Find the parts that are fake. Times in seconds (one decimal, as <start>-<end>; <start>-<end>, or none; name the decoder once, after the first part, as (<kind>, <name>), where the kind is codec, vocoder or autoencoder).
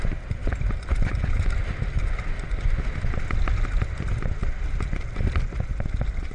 none